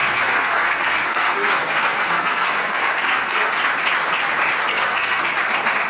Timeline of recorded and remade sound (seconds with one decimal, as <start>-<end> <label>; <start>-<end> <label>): 0.0-3.5 remade; 3.5-4.7 recorded; 4.7-5.3 remade; 5.3-5.9 recorded